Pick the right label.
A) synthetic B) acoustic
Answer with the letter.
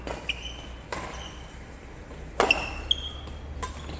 B